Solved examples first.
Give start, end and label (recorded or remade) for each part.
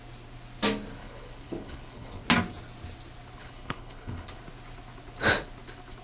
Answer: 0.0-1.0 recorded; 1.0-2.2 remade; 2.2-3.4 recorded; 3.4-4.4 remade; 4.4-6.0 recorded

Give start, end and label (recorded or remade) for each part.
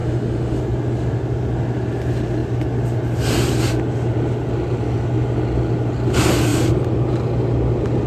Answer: 0.0-0.6 remade; 0.6-8.1 recorded